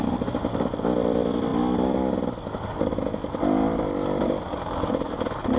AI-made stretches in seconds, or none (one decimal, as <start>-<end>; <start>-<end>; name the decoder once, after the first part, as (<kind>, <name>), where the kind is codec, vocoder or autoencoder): none